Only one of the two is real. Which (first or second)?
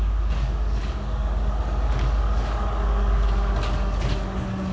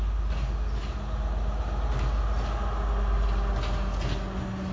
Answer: second